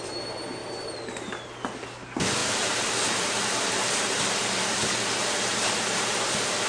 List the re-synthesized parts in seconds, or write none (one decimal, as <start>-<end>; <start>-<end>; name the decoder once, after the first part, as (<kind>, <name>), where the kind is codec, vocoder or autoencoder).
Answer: 0.6-1.6 (vocoder, BigVGAN v2); 2.4-4.2; 5.5-6.1